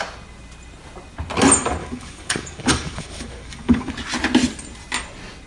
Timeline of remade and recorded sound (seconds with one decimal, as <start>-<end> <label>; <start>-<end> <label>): 0.0-1.8 recorded; 1.8-3.9 remade; 3.9-5.5 recorded